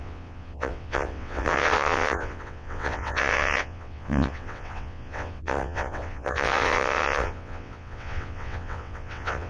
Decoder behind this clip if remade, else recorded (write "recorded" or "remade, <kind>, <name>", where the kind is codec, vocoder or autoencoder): remade, vocoder, WaveNeXt